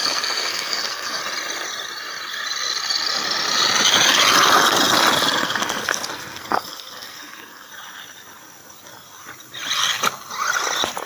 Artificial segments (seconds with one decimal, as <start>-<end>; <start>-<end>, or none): 0.0-1.2; 5.4-7.7